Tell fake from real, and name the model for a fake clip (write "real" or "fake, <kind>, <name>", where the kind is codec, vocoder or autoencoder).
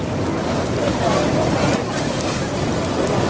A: real